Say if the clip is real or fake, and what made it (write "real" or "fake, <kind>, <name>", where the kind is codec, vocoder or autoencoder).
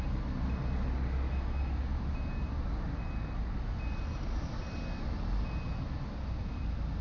real